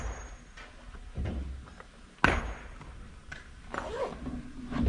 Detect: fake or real real